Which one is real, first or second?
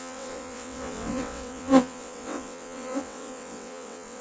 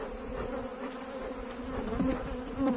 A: second